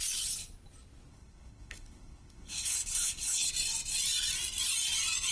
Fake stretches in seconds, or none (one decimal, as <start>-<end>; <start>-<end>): 1.1-3.5